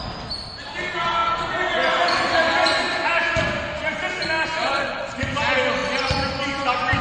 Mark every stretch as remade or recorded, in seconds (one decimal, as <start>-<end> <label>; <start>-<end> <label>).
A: 0.0-4.6 recorded; 4.6-5.2 remade; 5.2-7.0 recorded